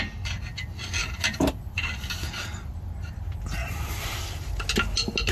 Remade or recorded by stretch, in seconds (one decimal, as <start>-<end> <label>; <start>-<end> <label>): 0.0-1.0 recorded; 1.0-1.9 remade; 1.9-3.6 recorded; 3.6-4.7 remade; 4.7-5.3 recorded